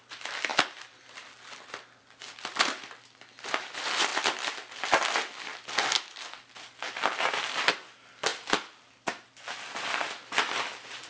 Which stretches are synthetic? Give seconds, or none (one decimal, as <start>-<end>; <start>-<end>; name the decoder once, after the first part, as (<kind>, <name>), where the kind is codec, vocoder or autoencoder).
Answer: none